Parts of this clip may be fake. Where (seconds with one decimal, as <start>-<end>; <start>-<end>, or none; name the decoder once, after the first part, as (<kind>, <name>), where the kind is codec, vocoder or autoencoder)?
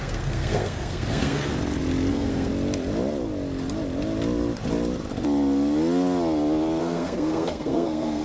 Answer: 0.0-1.5 (codec, SNAC); 2.1-2.5; 6.8-8.2